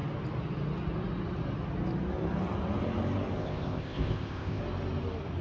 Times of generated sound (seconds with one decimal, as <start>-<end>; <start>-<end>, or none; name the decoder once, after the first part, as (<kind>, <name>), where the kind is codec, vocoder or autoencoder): 3.4-4.6 (codec, ZipCodec)